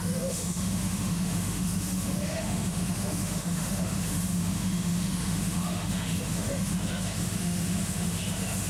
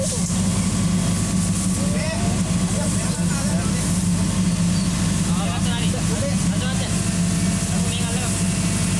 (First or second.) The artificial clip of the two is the first